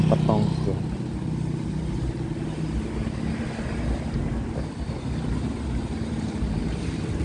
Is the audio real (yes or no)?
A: yes